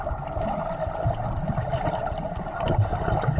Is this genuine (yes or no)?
yes